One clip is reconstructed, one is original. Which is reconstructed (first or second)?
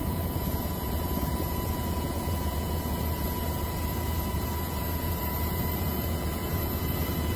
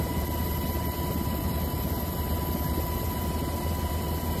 first